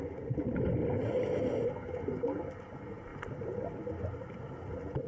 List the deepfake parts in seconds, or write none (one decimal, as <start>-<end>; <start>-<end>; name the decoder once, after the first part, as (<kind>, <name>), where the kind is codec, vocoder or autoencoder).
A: none